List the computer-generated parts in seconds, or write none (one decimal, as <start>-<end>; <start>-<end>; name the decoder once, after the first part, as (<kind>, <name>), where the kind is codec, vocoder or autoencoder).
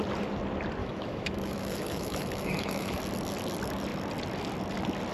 0.8-3.0 (autoencoder, DAC-VAE)